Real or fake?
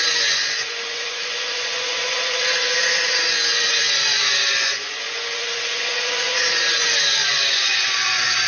fake